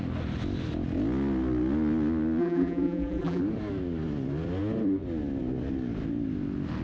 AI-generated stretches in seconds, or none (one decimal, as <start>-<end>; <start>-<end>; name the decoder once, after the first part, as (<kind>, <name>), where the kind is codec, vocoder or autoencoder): 2.4-3.4 (vocoder, BigVGAN v2)